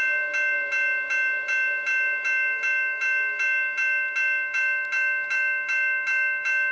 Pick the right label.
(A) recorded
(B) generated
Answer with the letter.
A